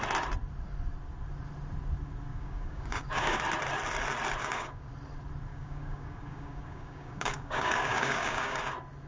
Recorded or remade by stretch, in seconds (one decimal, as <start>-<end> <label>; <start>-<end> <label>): 0.0-2.3 recorded; 2.3-3.4 remade; 3.4-4.4 recorded; 4.4-4.9 remade; 4.9-5.5 recorded; 5.5-8.6 remade; 8.6-9.1 recorded